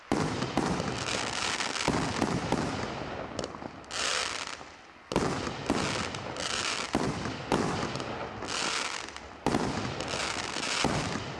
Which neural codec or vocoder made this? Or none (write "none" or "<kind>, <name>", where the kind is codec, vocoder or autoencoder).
none